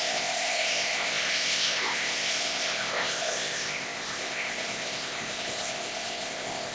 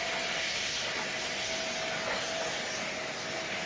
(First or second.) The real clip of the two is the second